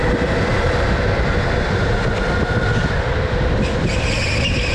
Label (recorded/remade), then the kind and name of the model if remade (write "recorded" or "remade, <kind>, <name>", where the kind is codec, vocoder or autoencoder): recorded